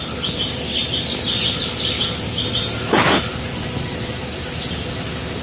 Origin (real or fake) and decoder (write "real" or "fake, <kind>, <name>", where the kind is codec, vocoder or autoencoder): real